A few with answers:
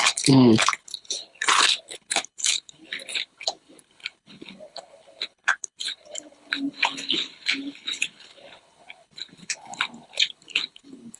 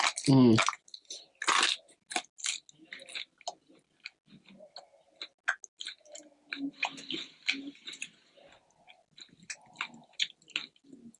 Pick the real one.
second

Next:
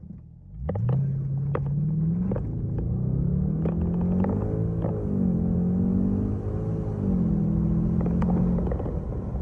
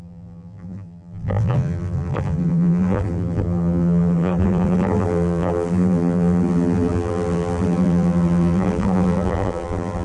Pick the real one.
first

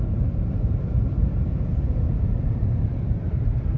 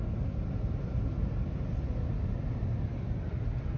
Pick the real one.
second